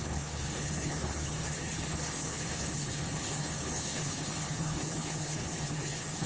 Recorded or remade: remade